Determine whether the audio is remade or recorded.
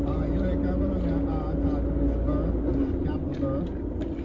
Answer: recorded